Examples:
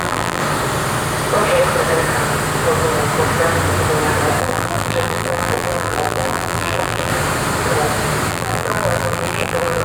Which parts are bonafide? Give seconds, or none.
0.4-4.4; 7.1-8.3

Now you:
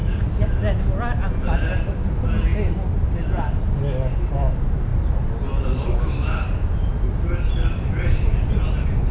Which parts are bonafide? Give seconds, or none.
0.9-2.5; 3.6-4.9; 8.5-9.1

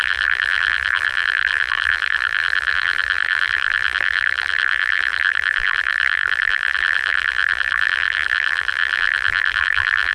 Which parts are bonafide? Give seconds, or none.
none

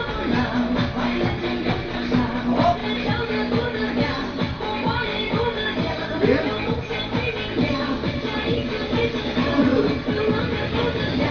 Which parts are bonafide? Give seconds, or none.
0.0-11.3

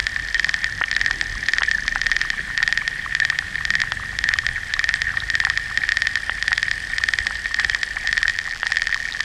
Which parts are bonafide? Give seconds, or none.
0.0-8.3